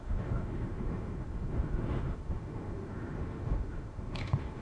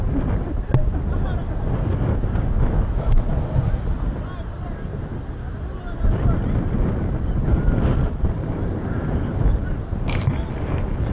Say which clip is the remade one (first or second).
first